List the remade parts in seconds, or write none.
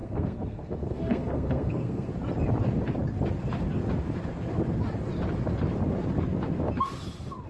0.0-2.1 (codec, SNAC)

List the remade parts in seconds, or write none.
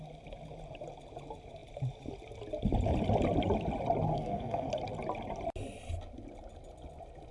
4.1-4.7 (codec, SNAC)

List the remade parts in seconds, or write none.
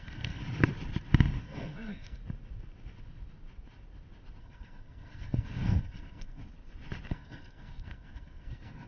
0.0-0.4 (codec, SNAC); 1.4-2.2; 4.4-6.4; 7.1-8.9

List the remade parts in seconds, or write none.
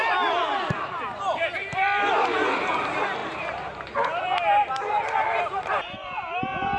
none